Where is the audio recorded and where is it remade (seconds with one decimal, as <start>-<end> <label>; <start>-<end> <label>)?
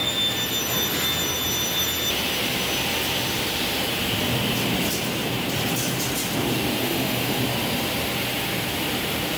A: 0.0-6.8 recorded; 6.8-7.4 remade; 7.4-9.4 recorded